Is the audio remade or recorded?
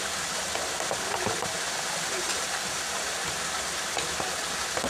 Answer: recorded